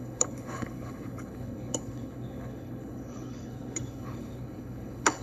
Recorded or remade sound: remade